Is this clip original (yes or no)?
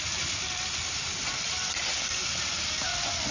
yes